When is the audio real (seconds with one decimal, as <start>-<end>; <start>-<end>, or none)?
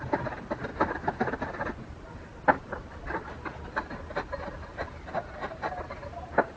0.0-6.6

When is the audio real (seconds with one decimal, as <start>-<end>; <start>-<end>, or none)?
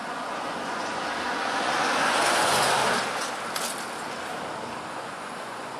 2.8-4.9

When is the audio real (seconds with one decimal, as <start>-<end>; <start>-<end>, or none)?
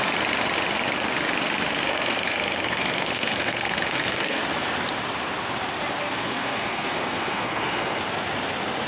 0.0-1.9; 4.4-6.0; 8.0-8.9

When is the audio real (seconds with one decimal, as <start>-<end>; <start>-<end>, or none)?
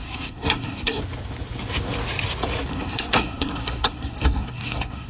1.0-2.7